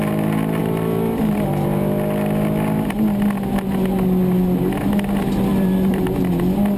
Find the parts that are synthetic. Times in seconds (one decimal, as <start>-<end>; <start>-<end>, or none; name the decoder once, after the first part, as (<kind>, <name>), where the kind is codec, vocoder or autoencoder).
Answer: 5.5-6.1 (vocoder, BigVGAN v2)